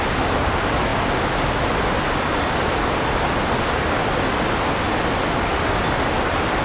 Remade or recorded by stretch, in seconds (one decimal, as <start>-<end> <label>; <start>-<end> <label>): 0.0-5.5 recorded; 5.5-6.6 remade